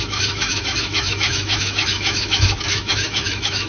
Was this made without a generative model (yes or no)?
no